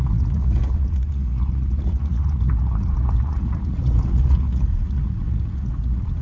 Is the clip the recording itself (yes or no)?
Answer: no